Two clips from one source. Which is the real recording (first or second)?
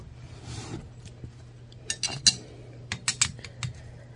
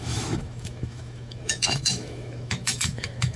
first